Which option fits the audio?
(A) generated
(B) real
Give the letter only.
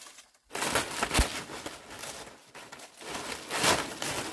B